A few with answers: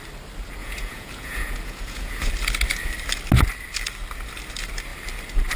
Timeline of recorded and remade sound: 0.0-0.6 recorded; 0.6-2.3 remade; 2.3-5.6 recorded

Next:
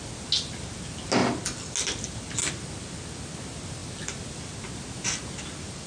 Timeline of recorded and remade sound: 0.0-5.9 recorded

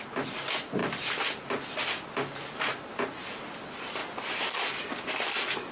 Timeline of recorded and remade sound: 0.0-5.7 recorded

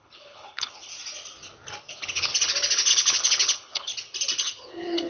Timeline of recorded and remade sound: 0.0-0.9 remade; 0.9-1.9 recorded; 1.9-2.3 remade; 2.3-2.9 recorded; 2.9-3.9 remade; 3.9-4.4 recorded; 4.4-5.1 remade

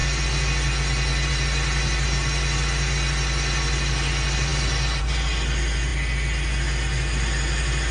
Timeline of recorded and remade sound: 0.0-7.9 recorded

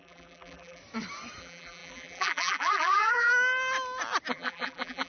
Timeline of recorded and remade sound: 0.0-0.8 remade; 0.8-1.4 recorded; 1.4-3.3 remade; 3.3-4.3 recorded; 4.3-5.1 remade

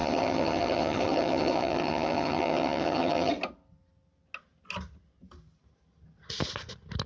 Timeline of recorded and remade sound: 0.0-3.3 remade; 3.3-7.1 recorded